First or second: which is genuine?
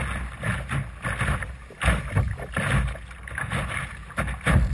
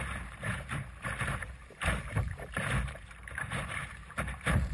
first